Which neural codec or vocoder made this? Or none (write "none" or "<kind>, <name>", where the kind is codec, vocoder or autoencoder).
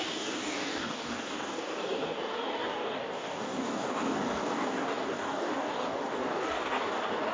codec, DAC